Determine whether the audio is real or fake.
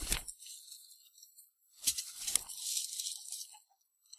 real